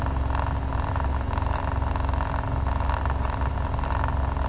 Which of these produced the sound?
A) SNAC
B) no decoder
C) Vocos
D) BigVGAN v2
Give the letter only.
B